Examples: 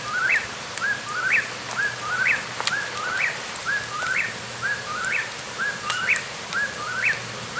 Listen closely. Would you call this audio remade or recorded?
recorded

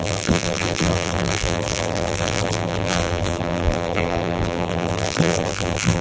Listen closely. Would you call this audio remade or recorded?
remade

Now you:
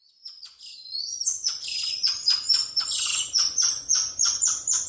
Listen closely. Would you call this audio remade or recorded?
remade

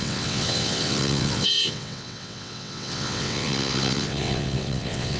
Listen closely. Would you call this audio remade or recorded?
remade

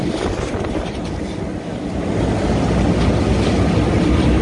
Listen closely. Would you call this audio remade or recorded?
recorded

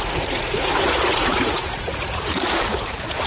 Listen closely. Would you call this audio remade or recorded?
remade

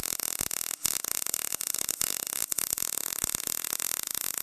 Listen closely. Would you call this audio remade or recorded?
recorded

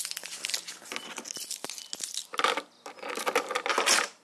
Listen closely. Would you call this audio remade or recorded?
recorded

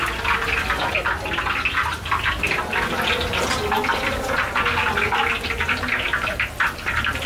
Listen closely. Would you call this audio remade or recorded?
recorded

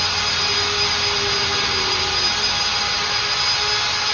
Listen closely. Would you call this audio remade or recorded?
recorded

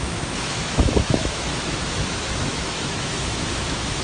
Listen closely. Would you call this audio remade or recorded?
remade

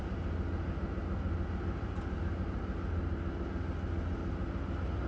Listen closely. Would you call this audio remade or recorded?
recorded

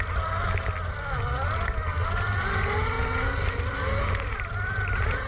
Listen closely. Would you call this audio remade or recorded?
recorded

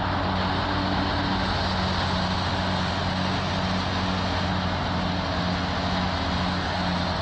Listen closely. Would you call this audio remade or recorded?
recorded